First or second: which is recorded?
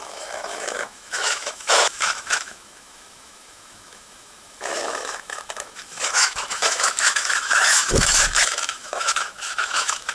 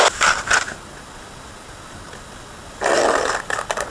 second